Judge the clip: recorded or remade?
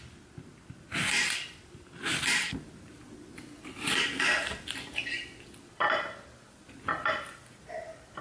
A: recorded